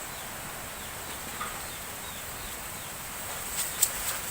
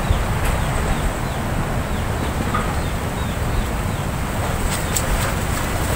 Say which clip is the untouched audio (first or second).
second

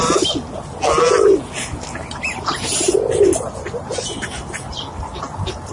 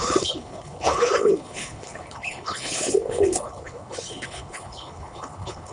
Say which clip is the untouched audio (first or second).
first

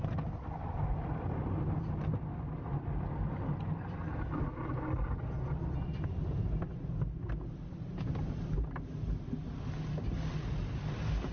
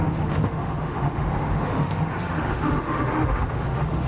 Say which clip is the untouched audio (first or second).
first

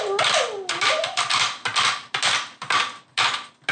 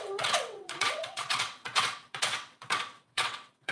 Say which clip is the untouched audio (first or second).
first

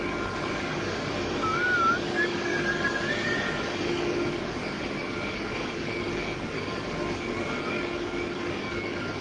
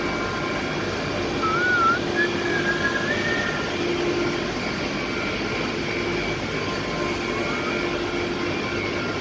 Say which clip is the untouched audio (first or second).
second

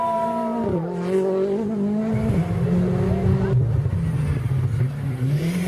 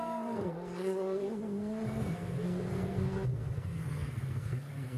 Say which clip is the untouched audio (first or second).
first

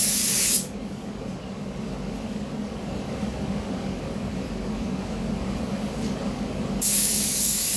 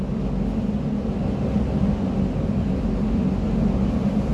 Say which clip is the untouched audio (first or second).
second